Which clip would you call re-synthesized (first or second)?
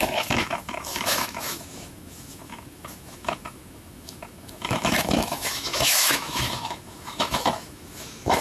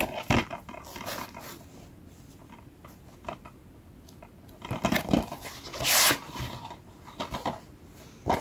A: first